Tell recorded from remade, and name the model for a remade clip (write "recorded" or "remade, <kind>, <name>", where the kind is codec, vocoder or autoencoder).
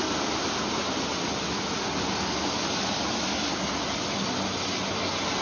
recorded